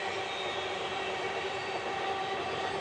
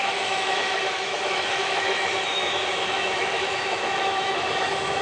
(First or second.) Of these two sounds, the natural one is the first